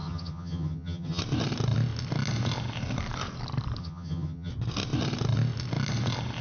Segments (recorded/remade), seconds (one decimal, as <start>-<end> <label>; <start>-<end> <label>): 0.0-1.2 remade; 1.2-3.8 recorded; 3.8-4.5 remade; 4.5-6.4 recorded